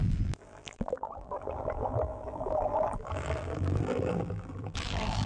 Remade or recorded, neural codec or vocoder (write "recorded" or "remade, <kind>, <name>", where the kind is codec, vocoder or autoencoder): remade, vocoder, BigVGAN v2